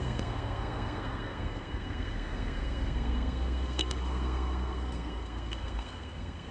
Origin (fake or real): fake